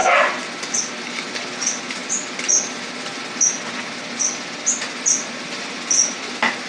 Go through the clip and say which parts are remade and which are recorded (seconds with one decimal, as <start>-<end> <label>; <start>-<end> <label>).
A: 0.0-6.7 recorded